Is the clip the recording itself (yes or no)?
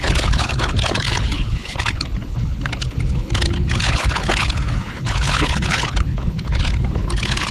no